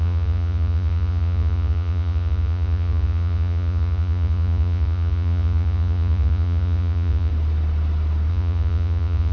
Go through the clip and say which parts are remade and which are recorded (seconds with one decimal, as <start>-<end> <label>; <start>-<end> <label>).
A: 0.0-7.3 remade; 7.3-8.3 recorded; 8.3-9.3 remade